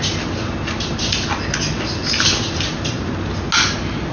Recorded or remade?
recorded